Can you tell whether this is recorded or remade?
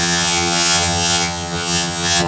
remade